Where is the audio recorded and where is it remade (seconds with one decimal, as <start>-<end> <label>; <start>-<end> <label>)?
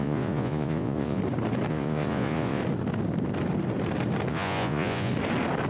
0.0-1.2 remade; 1.2-1.7 recorded; 1.7-2.6 remade; 2.6-4.3 recorded; 4.3-5.1 remade; 5.1-5.7 recorded